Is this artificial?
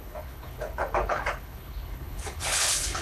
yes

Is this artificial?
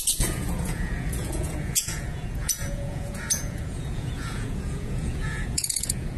yes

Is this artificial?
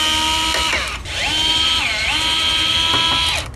no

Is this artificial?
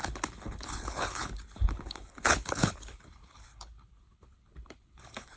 yes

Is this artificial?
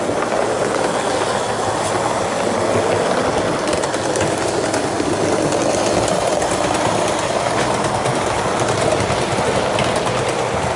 no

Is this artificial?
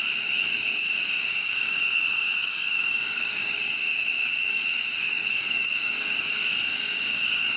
yes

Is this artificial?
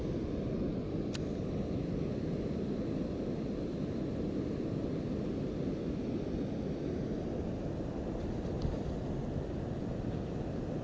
no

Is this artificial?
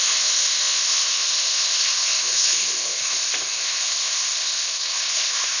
yes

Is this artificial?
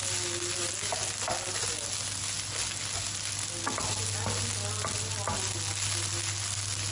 no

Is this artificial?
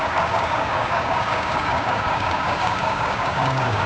yes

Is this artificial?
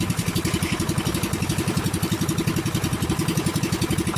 no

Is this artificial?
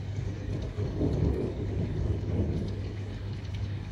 yes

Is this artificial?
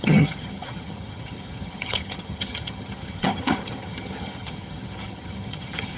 yes